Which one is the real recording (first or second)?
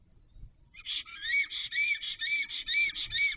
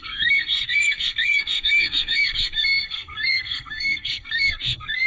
first